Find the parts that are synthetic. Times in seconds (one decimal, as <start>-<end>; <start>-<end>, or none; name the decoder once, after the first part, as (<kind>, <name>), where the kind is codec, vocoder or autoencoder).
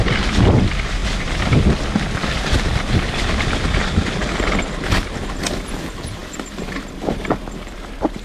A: none